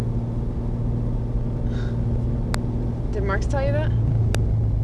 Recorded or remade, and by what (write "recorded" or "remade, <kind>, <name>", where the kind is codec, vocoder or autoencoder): recorded